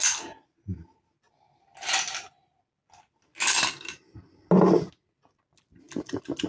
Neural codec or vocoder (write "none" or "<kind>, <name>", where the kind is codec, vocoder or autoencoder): none